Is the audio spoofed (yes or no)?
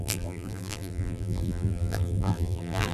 yes